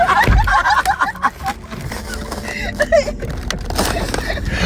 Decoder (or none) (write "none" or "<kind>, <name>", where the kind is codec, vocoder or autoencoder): none